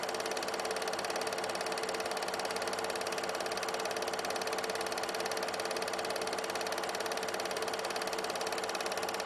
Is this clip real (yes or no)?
yes